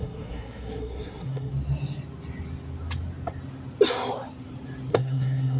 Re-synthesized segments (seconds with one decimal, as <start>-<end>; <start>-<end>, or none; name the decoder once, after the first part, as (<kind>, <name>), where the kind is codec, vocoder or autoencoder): 0.0-1.5 (codec, SNAC); 4.9-5.6

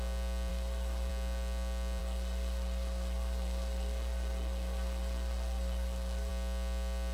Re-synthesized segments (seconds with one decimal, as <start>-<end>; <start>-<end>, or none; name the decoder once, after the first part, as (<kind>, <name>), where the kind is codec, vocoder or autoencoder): 0.5-1.1 (codec, SNAC); 2.0-6.3